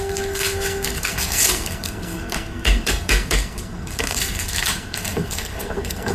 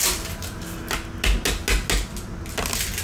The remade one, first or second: first